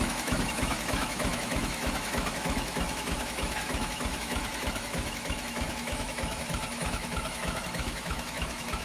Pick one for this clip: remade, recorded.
remade